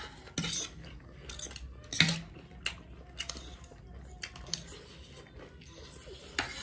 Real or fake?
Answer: real